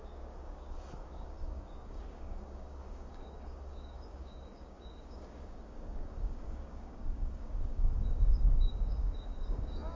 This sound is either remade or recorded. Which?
remade